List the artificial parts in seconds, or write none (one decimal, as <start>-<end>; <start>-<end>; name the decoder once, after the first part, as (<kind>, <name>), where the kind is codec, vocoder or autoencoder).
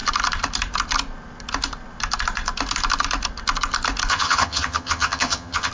4.1-5.7 (vocoder, HiFi-GAN)